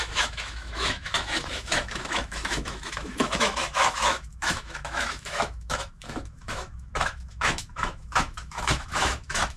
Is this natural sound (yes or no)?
no